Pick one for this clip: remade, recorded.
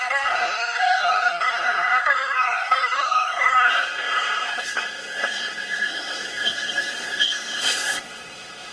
remade